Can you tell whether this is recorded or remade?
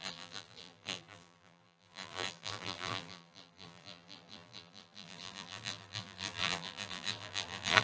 remade